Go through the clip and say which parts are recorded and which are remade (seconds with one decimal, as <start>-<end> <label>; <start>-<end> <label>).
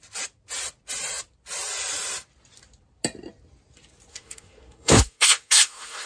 0.0-4.1 recorded; 4.1-6.1 remade